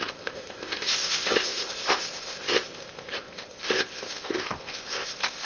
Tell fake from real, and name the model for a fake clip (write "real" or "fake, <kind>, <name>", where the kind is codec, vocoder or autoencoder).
fake, codec, ZipCodec